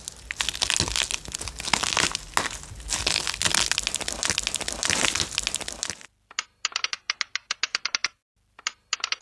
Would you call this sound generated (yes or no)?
no